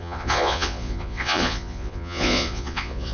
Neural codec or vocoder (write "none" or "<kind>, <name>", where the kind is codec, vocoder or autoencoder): vocoder, Vocos